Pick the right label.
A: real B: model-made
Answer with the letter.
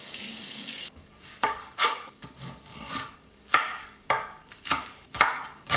B